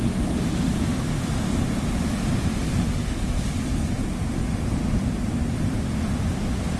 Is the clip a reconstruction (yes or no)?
no